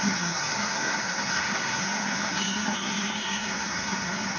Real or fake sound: fake